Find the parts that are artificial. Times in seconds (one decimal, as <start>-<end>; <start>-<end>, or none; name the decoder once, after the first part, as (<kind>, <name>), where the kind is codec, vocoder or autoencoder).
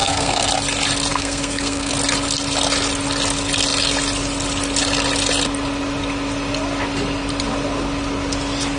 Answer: 0.0-0.5 (codec, SNAC); 1.1-1.9